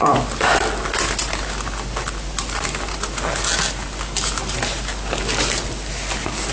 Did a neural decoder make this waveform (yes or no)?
no